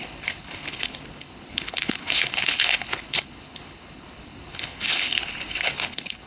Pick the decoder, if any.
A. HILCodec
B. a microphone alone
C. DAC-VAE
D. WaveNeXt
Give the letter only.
A